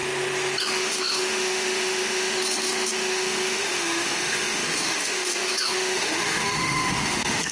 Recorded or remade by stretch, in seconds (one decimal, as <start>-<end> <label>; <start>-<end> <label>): 0.0-0.6 recorded; 0.6-7.5 remade